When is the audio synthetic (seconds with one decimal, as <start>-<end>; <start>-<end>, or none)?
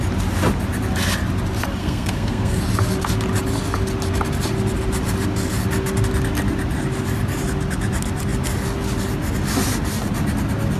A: 1.8-2.6